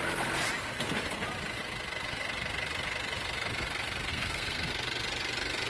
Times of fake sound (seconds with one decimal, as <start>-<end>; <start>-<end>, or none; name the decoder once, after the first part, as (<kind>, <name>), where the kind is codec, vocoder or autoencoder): 4.1-4.7 (codec, SNAC)